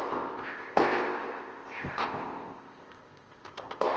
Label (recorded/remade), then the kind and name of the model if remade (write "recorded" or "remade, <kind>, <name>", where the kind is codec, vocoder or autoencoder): remade, codec, ZipCodec